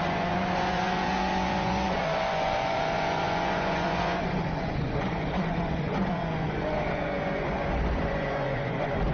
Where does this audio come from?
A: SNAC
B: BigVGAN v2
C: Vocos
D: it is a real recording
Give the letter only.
C